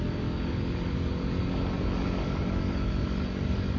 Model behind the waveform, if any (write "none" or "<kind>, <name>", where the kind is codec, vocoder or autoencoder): codec, DAC